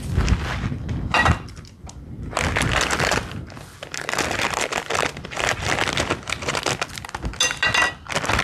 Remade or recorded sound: recorded